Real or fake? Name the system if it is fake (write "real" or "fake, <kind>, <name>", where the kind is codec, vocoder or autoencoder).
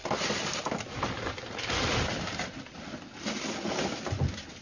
real